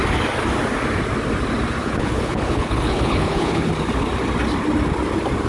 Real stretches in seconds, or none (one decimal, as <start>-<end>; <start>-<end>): 0.0-1.8; 3.7-5.5